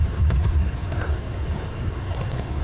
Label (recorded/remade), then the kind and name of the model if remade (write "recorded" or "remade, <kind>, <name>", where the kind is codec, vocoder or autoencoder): remade, codec, SNAC